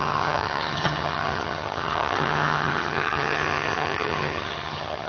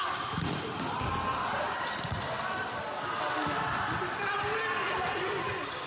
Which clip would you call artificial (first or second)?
first